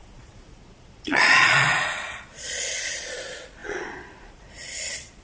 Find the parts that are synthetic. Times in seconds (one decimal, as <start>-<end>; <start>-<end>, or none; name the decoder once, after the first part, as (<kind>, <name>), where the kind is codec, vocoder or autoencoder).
0.0-5.2 (vocoder, Vocos)